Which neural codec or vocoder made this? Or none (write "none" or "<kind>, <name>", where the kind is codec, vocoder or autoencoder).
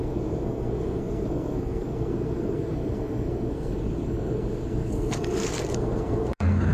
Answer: codec, SNAC